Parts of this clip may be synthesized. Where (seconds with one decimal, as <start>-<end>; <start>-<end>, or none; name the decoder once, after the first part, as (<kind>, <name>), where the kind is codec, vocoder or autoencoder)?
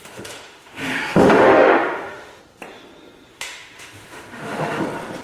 0.0-2.4 (autoencoder, DAC-VAE); 3.3-4.8